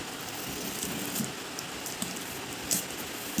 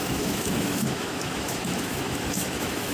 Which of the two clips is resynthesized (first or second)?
second